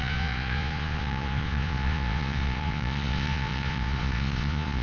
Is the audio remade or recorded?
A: remade